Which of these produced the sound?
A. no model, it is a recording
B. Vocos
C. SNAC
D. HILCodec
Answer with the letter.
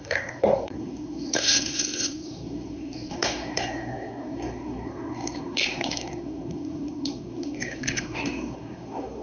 C